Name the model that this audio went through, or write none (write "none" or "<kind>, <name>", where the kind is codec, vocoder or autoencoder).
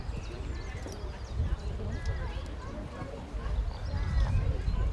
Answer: none